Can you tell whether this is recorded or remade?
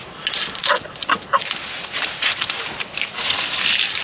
recorded